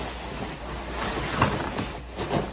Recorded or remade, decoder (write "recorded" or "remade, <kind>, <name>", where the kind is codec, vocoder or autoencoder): recorded